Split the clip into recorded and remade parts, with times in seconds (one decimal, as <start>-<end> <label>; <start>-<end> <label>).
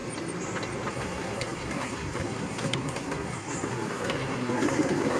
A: 0.0-0.9 recorded; 0.9-5.2 remade